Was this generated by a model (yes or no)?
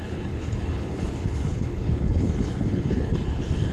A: yes